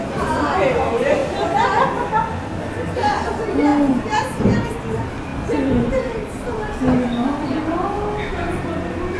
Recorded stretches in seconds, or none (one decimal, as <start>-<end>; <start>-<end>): 0.0-9.2